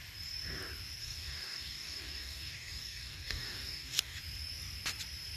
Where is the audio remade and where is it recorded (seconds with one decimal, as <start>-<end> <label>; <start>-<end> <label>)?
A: 0.0-1.0 recorded; 1.0-4.2 remade; 4.2-5.4 recorded